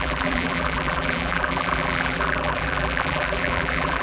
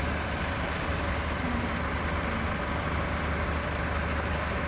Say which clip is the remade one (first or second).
first